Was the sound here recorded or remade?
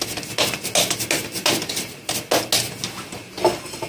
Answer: recorded